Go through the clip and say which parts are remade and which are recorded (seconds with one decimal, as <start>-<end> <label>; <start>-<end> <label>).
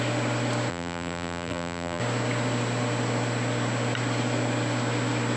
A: 0.0-0.7 recorded; 0.7-2.0 remade; 2.0-5.4 recorded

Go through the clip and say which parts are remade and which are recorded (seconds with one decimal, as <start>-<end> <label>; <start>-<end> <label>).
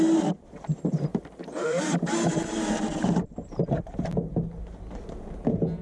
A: 0.0-1.1 recorded; 1.1-4.6 remade; 4.6-5.8 recorded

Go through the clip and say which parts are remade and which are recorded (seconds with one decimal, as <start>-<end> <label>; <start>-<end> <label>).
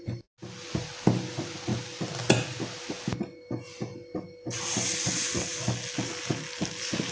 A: 0.0-1.7 recorded; 1.7-2.8 remade; 2.8-3.9 recorded; 3.9-5.1 remade; 5.1-5.5 recorded; 5.5-6.3 remade; 6.3-7.1 recorded